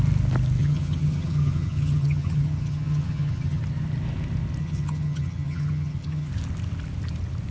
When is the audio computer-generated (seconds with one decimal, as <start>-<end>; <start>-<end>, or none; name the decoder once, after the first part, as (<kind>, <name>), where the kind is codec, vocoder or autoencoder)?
0.6-3.6 (vocoder, HiFi-GAN); 4.6-6.3